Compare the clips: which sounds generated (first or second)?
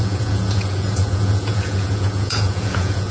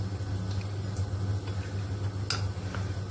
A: first